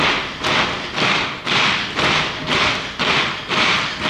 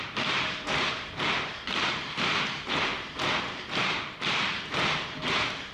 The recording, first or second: first